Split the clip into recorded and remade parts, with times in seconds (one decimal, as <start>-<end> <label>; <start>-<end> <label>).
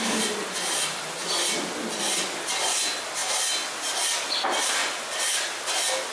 0.0-6.1 recorded